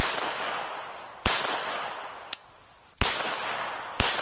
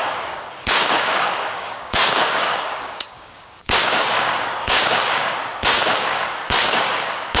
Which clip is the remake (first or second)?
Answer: second